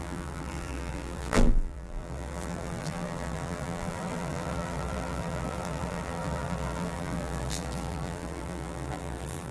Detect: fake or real fake